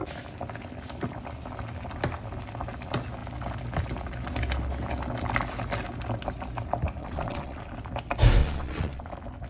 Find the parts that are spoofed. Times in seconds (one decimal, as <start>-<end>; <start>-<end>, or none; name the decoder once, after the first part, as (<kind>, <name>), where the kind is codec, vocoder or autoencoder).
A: 7.0-7.6 (vocoder, Vocos); 8.4-9.1